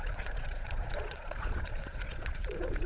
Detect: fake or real fake